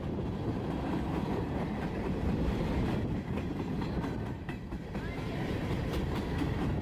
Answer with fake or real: fake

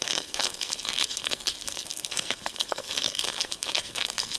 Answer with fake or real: fake